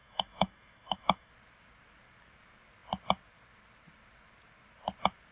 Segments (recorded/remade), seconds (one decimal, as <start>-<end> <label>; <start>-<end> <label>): 0.0-1.3 remade; 1.3-5.3 recorded